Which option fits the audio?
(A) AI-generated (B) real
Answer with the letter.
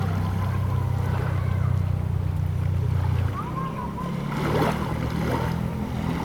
B